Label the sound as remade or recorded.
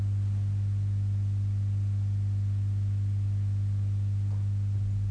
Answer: recorded